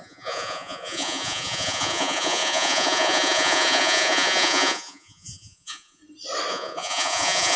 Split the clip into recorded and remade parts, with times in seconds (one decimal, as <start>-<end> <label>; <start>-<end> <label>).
0.0-6.0 remade; 6.0-6.5 recorded; 6.5-7.6 remade